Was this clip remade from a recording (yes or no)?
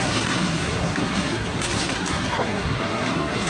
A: yes